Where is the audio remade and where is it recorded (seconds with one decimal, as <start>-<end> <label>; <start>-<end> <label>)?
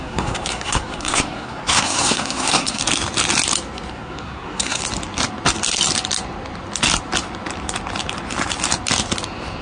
0.0-2.8 remade; 2.8-3.9 recorded; 3.9-4.8 remade; 4.8-9.6 recorded